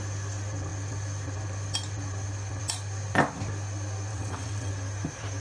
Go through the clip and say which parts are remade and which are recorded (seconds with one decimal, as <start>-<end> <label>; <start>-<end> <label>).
0.0-4.1 recorded; 4.1-4.7 remade; 4.7-5.4 recorded